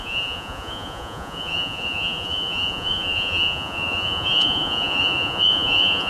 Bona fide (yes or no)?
no